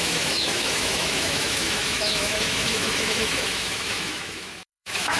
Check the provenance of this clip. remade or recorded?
remade